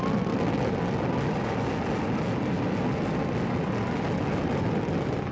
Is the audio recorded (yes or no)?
yes